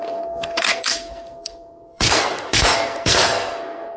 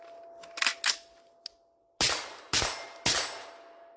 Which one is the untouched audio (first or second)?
second